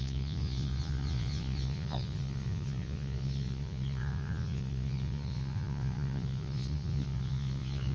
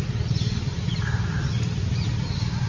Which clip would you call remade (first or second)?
first